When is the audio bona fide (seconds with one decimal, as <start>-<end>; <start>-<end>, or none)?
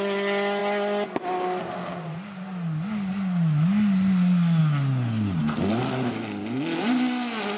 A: 0.0-7.6